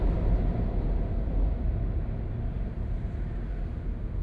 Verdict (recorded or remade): recorded